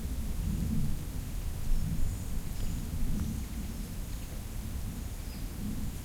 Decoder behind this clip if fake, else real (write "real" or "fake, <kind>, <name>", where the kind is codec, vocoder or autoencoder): real